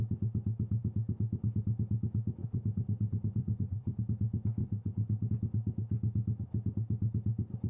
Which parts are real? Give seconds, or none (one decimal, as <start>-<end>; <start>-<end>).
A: 0.0-2.4; 4.0-4.6; 5.3-7.7